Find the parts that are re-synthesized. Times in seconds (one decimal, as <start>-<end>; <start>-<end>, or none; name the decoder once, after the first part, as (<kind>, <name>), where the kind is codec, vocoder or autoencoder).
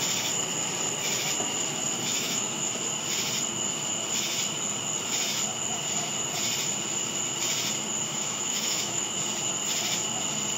2.1-2.7 (autoencoder, DAC-VAE); 8.1-9.1